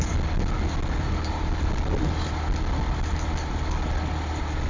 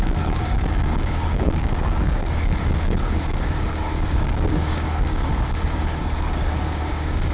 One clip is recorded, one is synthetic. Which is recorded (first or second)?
first